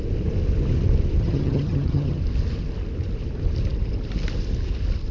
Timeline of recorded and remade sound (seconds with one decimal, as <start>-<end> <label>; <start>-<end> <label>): 0.0-1.2 recorded; 1.2-2.2 remade; 2.2-5.1 recorded